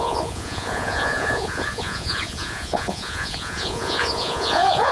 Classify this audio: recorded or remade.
remade